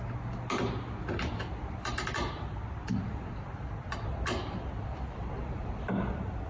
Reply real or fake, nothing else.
real